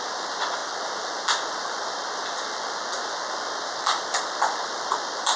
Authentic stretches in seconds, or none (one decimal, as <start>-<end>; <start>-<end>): 0.0-5.4